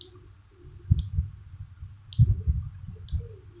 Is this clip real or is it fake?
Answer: real